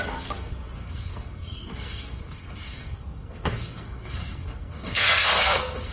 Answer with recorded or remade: remade